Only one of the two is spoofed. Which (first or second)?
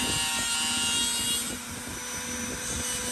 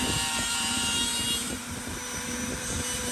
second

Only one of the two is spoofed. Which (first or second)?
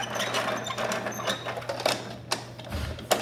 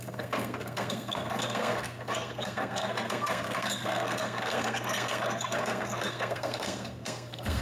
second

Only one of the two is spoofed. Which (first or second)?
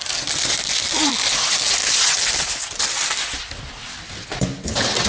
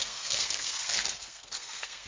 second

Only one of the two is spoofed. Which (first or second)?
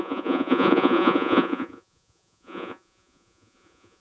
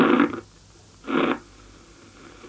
first